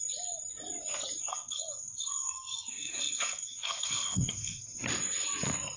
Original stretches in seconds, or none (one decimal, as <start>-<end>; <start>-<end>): 0.0-1.3; 4.8-5.8